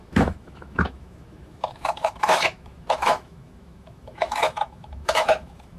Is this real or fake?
fake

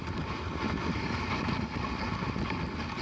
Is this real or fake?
real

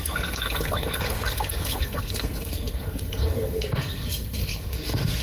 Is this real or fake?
fake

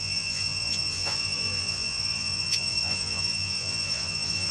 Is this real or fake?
fake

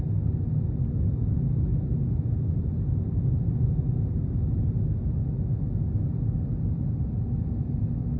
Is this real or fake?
real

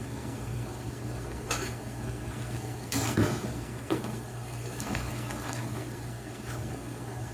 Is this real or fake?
fake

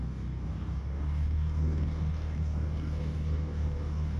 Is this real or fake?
fake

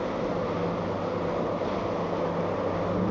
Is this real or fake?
real